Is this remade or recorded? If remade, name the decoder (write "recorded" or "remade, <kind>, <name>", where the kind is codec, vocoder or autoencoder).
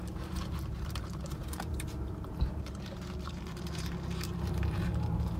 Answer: remade, vocoder, BigVGAN v2